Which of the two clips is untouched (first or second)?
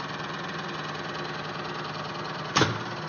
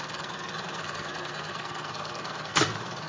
first